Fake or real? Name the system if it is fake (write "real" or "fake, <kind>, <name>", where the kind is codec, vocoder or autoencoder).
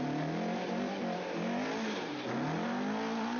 real